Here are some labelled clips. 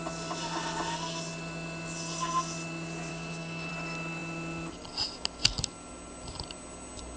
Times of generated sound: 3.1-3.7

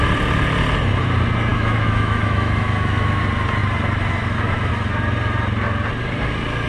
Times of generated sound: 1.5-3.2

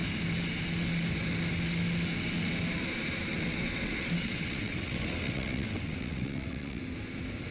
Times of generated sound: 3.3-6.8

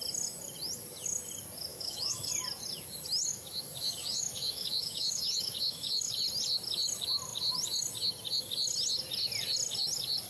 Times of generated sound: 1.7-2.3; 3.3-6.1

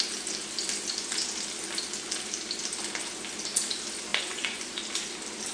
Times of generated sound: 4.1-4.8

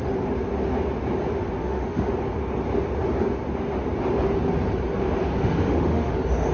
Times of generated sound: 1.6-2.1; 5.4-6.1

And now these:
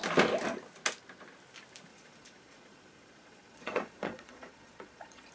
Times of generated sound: 1.9-5.3

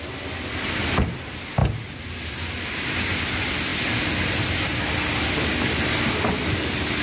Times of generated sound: none